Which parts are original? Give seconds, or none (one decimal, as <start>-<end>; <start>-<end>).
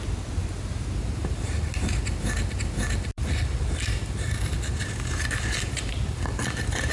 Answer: 0.0-6.9